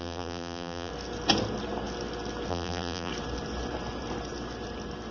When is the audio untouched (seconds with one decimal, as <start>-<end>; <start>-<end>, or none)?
0.9-2.5; 3.1-5.1